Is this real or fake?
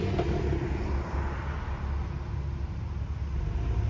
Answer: real